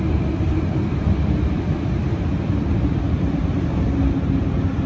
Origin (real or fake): real